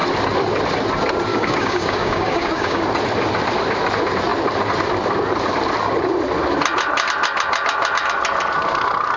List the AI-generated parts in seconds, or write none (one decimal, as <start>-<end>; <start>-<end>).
1.3-2.8